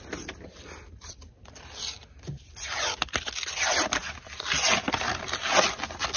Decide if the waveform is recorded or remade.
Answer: recorded